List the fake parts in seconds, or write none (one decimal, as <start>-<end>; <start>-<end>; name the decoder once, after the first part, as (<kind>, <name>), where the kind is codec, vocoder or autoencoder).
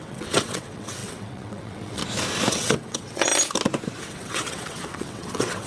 0.0-2.0 (vocoder, WaveNeXt); 2.5-3.3; 4.0-5.7